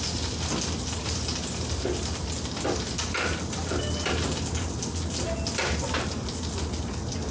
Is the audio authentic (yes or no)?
yes